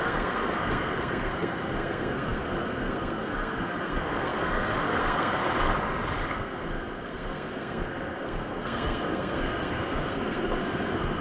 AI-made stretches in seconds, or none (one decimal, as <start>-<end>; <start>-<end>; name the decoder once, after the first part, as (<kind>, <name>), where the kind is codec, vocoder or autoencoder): 0.0-5.4 (codec, SNAC); 6.3-11.2

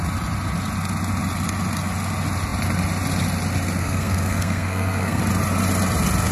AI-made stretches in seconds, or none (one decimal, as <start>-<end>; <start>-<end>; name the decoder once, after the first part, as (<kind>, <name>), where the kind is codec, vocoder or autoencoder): 3.8-5.2 (codec, SNAC)

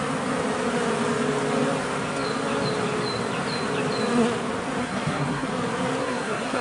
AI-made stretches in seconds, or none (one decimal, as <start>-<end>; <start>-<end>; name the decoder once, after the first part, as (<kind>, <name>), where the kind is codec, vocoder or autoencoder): 4.8-5.5 (codec, SNAC); 6.0-6.6

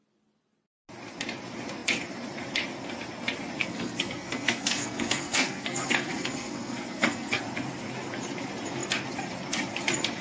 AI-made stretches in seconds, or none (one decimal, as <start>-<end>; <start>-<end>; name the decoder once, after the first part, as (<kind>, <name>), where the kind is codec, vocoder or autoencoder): 3.6-7.4 (codec, SNAC)

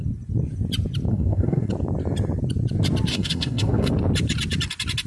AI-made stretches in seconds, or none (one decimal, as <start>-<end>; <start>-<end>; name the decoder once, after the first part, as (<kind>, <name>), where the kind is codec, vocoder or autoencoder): 1.1-1.7 (codec, SNAC); 3.1-3.9

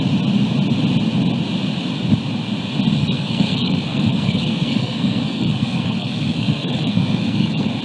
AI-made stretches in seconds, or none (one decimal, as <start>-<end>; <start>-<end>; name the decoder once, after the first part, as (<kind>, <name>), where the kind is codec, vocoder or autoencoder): 3.0-7.8 (codec, SNAC)

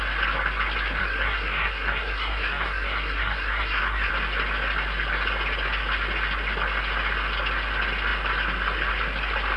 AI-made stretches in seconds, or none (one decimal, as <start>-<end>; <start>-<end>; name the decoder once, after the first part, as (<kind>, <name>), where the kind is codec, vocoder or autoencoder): 1.0-4.1 (codec, SNAC)